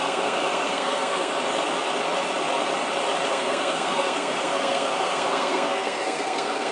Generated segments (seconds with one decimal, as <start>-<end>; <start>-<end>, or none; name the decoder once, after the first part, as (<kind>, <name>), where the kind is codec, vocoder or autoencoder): 0.0-1.3 (codec, SNAC); 3.3-6.7